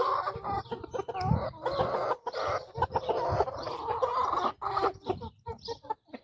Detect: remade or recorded recorded